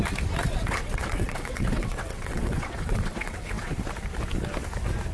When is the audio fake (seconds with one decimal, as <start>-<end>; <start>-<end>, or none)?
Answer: 0.6-3.7